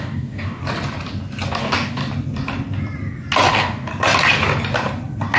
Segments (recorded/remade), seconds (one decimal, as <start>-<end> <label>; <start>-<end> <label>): 0.0-0.6 remade; 0.6-1.6 recorded; 1.6-2.0 remade; 2.0-3.5 recorded; 3.5-3.9 remade; 3.9-5.4 recorded